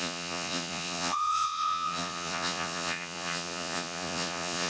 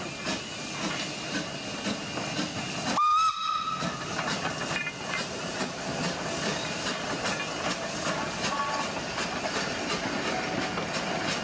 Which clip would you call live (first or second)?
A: second